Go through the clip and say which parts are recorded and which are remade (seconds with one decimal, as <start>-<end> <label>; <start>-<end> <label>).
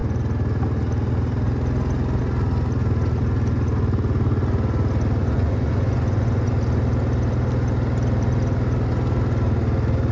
0.0-5.2 recorded; 5.2-6.5 remade; 6.5-10.1 recorded